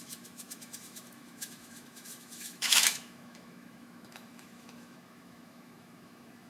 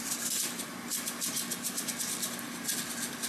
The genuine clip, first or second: second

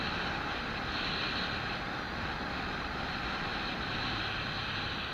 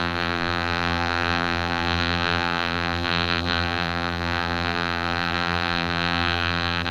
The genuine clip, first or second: first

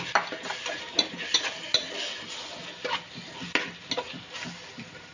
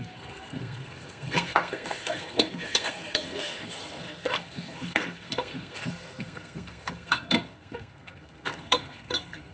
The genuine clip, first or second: first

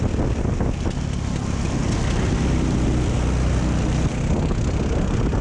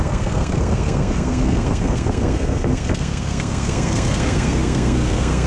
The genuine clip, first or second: first